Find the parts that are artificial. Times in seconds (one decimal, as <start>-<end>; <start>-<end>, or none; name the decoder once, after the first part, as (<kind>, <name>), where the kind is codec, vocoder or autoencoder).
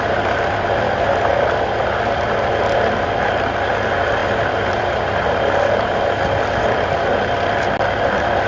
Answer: 1.3-3.2 (vocoder, BigVGAN v2)